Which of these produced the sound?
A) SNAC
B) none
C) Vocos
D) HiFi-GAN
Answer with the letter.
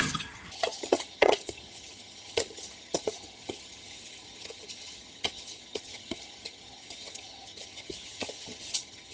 D